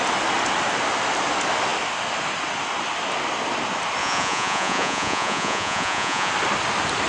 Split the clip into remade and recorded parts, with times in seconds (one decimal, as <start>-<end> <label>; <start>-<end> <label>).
0.0-4.0 recorded; 4.0-6.3 remade; 6.3-7.1 recorded